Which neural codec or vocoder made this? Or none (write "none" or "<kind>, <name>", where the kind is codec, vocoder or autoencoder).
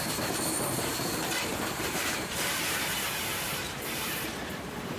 vocoder, BigVGAN v2